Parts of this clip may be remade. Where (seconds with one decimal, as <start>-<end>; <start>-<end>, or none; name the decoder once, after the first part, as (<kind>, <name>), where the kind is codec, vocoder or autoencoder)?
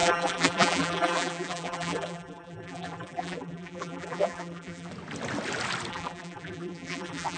0.0-4.9 (vocoder, BigVGAN v2); 5.9-7.4